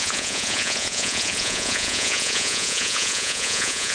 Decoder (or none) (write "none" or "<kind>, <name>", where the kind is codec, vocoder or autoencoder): vocoder, Vocos